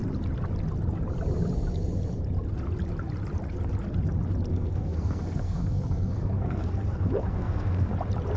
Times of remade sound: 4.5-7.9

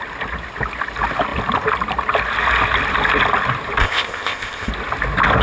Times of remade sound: 3.8-4.7